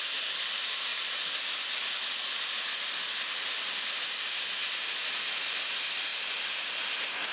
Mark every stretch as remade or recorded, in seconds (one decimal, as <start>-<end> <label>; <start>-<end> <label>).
0.0-7.3 recorded